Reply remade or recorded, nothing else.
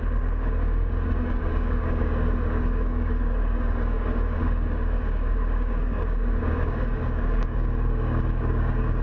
remade